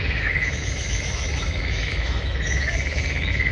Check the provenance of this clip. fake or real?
fake